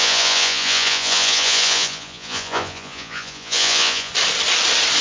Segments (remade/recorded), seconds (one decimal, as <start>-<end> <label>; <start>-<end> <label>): 0.0-4.1 remade; 4.1-5.0 recorded